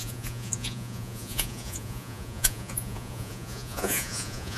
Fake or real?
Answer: fake